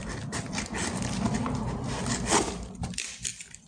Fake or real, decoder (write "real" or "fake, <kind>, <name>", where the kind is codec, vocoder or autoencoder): real